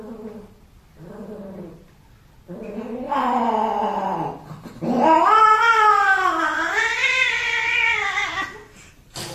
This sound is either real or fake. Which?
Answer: real